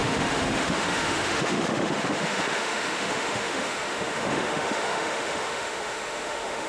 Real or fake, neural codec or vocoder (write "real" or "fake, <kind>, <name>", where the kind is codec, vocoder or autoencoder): fake, autoencoder, DAC-VAE